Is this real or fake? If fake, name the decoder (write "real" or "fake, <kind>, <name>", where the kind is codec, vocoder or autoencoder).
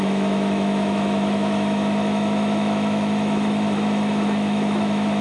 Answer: fake, autoencoder, DAC-VAE